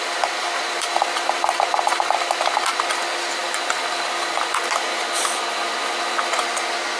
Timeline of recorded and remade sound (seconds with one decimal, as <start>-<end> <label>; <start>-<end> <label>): 0.0-7.0 recorded